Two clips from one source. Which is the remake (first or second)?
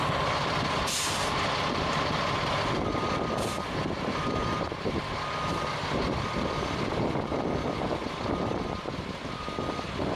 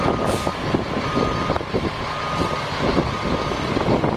first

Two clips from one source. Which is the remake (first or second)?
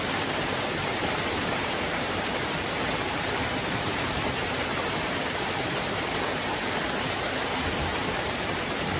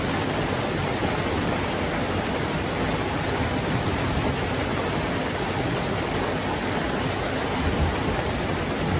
first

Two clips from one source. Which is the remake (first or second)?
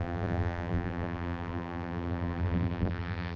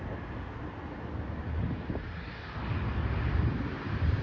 first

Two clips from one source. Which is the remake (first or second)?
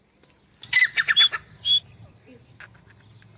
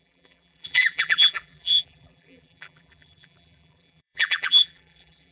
second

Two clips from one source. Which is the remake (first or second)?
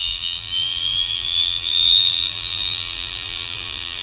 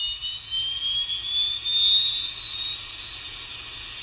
first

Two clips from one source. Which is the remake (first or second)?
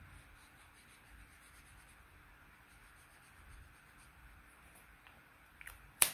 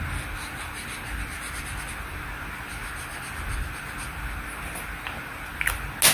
first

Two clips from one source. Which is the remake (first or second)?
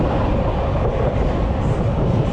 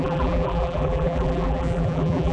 second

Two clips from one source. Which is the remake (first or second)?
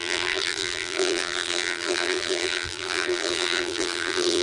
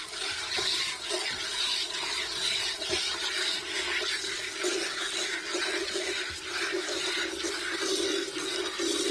first